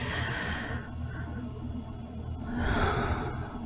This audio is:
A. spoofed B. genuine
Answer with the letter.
B